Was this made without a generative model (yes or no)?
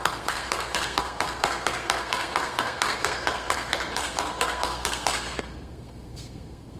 no